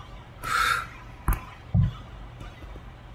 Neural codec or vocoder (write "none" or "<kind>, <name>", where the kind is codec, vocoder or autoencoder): none